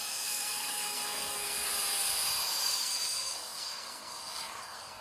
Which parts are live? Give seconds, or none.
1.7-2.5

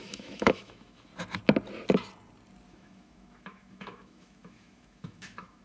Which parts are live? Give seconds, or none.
1.1-2.7

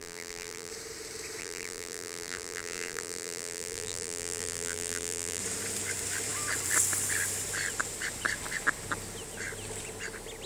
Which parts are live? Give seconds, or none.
0.7-1.4; 5.4-10.5

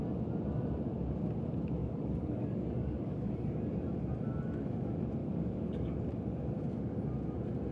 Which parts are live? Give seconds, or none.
0.0-1.8; 3.6-5.2; 5.8-7.7

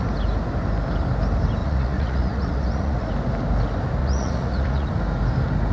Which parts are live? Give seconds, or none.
0.0-1.6; 3.1-4.0; 4.9-5.7